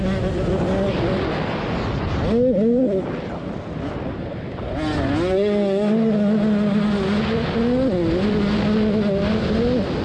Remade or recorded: recorded